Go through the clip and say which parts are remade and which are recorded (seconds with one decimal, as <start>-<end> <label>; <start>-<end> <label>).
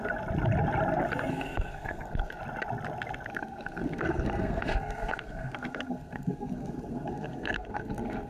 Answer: 0.0-1.3 recorded; 1.3-2.4 remade; 2.4-3.3 recorded; 3.3-8.3 remade